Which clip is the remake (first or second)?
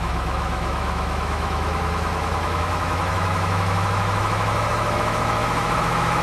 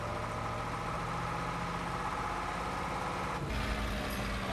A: first